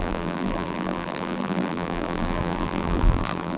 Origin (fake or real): fake